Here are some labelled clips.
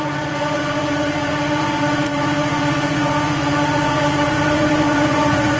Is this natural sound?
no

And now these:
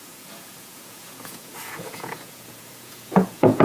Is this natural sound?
no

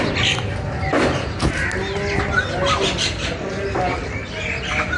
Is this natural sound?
yes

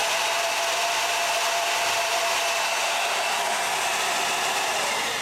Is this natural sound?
yes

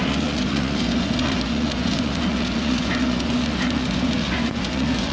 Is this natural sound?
no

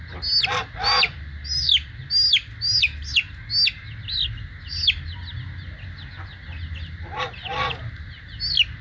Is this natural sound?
yes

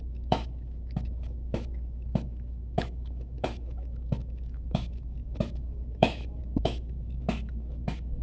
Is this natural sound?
no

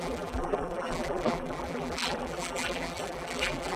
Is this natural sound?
no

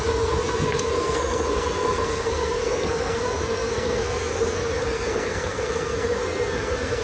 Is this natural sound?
no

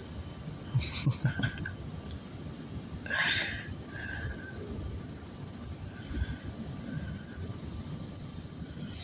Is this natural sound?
yes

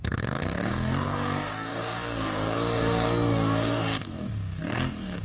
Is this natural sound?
no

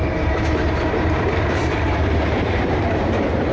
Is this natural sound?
no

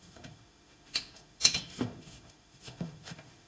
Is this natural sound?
no